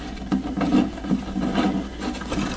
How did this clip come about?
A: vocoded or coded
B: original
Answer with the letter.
B